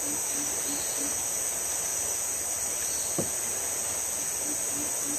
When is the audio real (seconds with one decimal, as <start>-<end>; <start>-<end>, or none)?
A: 0.0-5.2